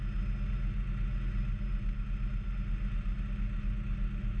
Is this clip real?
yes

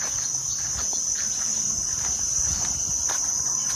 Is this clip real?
yes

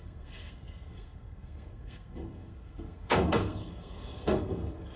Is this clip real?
no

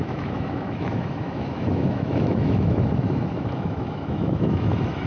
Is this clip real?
no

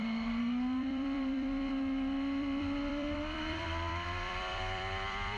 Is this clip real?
no